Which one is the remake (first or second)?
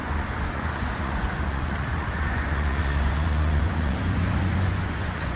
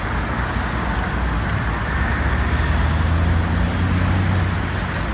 first